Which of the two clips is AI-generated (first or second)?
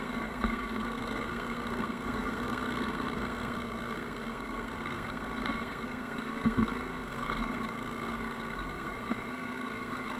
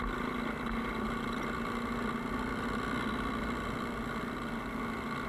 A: first